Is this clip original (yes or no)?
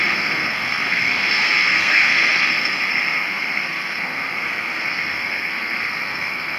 no